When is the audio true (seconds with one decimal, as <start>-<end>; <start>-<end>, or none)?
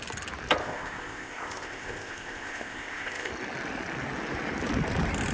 0.0-0.6; 3.3-5.3